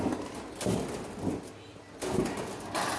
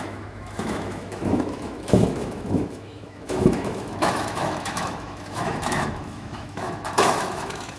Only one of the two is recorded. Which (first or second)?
first